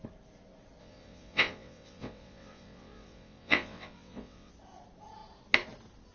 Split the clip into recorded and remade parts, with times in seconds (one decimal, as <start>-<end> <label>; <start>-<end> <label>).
0.0-0.8 recorded; 0.8-4.5 remade; 4.5-6.1 recorded